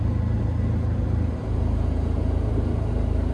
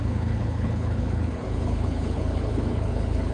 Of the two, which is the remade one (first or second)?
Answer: second